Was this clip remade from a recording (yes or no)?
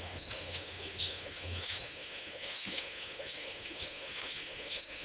yes